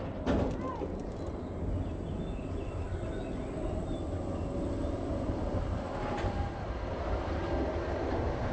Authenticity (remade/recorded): recorded